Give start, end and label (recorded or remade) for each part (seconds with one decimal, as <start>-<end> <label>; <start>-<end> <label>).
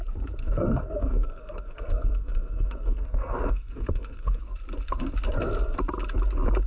0.0-0.4 recorded; 0.4-4.4 remade; 4.4-6.7 recorded